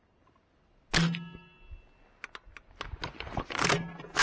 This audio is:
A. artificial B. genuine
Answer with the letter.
B